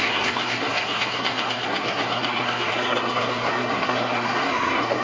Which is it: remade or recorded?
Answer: remade